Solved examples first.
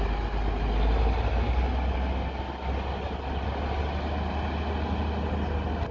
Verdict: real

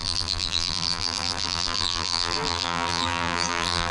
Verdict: fake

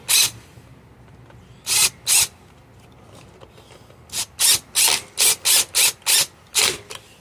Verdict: real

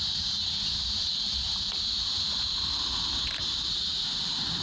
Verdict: real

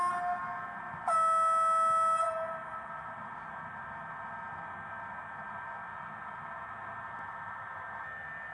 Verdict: real